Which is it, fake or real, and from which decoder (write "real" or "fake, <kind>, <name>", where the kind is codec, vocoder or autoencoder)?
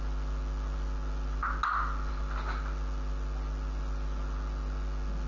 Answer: real